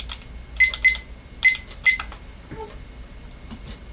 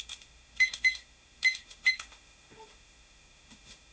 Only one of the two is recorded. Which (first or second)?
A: first